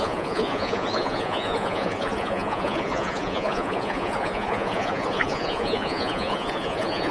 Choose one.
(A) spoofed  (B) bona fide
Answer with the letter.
A